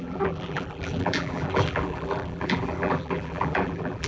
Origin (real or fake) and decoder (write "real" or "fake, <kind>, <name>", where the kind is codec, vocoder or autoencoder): fake, vocoder, BigVGAN v2